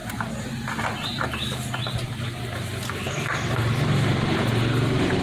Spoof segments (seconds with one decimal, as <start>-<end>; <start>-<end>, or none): 3.1-5.2